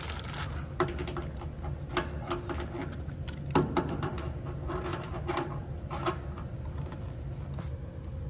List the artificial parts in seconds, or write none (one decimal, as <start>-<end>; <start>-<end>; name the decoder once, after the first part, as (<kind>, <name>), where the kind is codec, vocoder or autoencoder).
1.1-1.9 (vocoder, BigVGAN v2); 4.9-5.9